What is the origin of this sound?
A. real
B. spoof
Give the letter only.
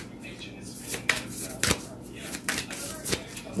B